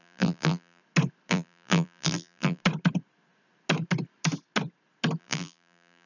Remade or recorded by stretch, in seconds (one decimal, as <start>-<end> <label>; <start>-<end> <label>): 0.0-0.8 remade; 0.8-1.3 recorded; 1.3-2.6 remade; 2.6-5.2 recorded; 5.2-6.1 remade